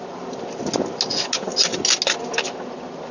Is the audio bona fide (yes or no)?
yes